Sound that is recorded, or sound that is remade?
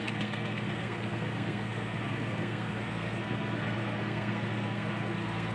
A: remade